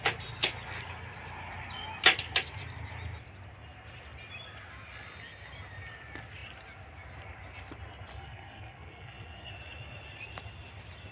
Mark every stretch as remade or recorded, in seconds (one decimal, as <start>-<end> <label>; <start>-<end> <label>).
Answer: 0.0-8.1 recorded; 8.1-9.5 remade; 9.5-11.1 recorded